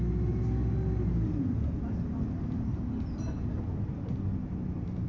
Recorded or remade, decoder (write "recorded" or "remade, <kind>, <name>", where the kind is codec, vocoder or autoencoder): recorded